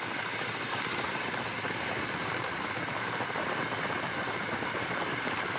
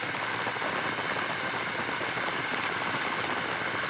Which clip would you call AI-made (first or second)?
first